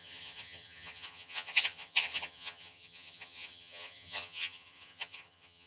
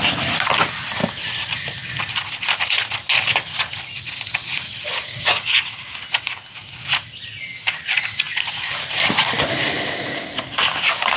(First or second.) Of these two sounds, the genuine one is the second